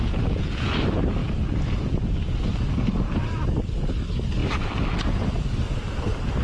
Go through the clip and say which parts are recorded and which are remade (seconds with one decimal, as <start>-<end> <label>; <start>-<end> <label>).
0.0-0.7 remade; 0.7-6.4 recorded